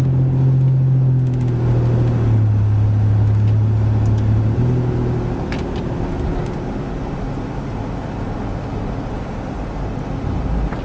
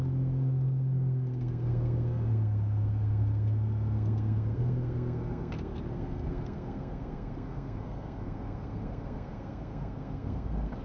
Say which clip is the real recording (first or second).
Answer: first